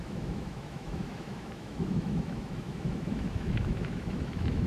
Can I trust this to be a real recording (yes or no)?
no